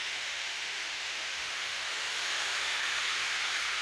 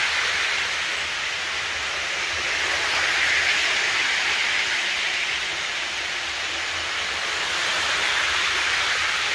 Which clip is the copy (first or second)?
first